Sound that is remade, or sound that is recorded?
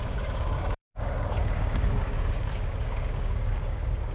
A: remade